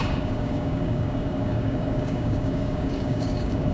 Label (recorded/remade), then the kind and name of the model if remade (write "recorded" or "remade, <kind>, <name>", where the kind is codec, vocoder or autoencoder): remade, codec, DAC